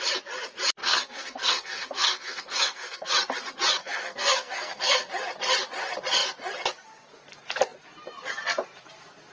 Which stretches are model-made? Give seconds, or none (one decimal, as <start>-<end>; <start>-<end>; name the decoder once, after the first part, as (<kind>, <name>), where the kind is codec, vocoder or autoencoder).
0.8-3.1 (codec, SNAC); 3.8-5.1